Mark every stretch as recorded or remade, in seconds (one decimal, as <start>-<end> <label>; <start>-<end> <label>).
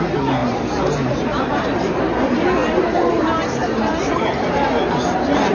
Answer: 0.0-0.4 recorded; 0.4-2.0 remade; 2.0-2.6 recorded; 2.6-3.2 remade; 3.2-3.6 recorded; 3.6-4.8 remade; 4.8-5.5 recorded